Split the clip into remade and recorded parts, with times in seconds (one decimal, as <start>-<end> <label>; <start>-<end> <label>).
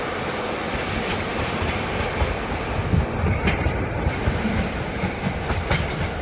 0.0-6.2 recorded